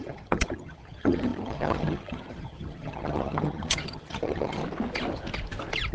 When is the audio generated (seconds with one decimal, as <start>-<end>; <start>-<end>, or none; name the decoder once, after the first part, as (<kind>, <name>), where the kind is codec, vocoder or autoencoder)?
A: 0.0-4.6 (vocoder, HiFi-GAN)